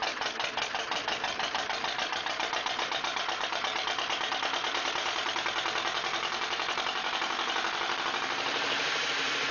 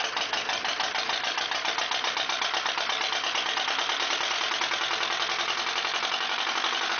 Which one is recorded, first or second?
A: second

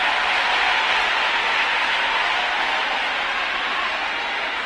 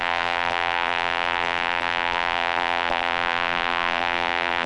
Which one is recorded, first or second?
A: first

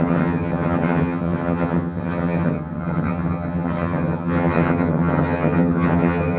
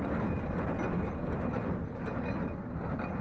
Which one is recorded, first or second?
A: second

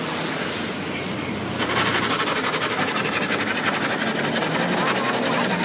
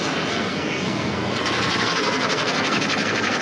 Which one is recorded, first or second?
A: first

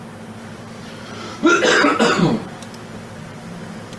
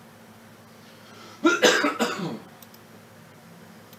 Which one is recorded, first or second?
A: second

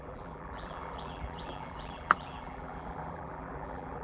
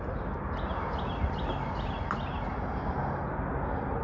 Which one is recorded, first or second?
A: second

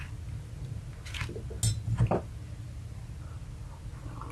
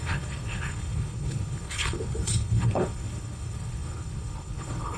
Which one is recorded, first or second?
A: first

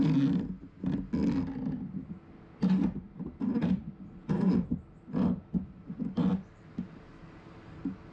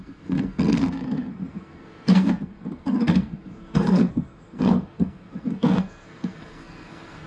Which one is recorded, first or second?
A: first